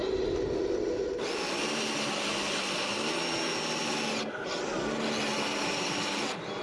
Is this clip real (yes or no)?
yes